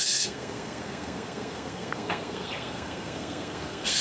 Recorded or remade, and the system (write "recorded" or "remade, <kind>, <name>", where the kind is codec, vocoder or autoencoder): remade, codec, SNAC